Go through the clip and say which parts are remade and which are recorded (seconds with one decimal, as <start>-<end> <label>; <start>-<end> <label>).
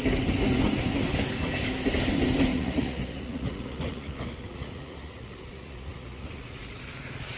0.0-2.5 recorded; 2.5-6.8 remade; 6.8-7.4 recorded